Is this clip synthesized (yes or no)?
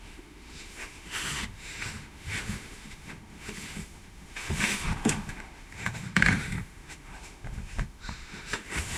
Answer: yes